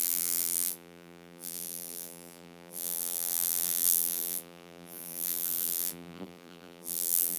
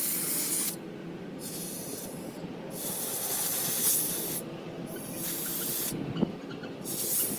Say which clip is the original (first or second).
second